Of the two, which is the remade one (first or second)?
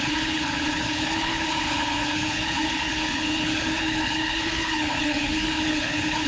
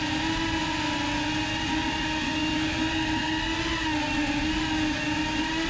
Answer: first